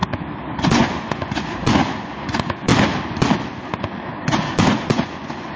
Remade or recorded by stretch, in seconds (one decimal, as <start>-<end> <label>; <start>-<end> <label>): 0.0-0.6 recorded; 0.6-2.7 remade; 2.7-4.2 recorded; 4.2-5.6 remade